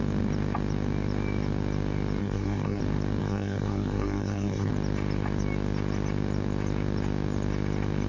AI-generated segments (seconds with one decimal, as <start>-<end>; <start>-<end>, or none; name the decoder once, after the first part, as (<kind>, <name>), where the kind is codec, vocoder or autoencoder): 2.2-2.8 (codec, SNAC); 3.2-4.7